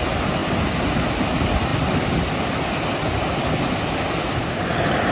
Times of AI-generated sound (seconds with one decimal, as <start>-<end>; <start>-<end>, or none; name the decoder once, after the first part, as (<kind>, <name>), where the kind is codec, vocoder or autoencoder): none